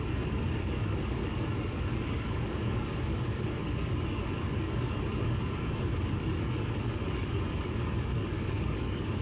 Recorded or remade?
remade